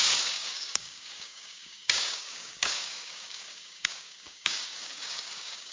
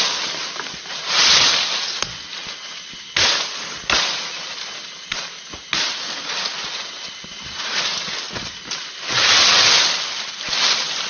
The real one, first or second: second